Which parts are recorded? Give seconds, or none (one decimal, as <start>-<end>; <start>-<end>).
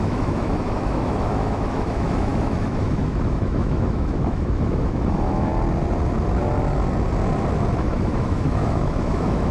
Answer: 5.5-7.8